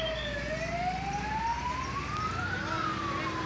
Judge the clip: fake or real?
real